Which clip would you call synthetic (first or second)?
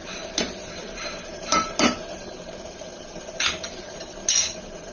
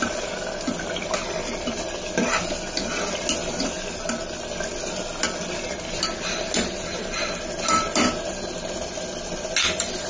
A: first